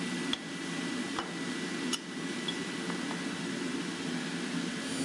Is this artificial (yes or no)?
no